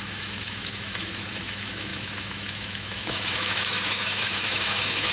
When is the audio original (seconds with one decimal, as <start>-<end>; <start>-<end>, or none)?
none